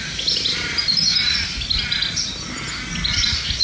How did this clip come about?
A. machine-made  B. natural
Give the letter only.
B